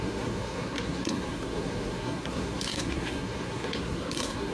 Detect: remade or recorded remade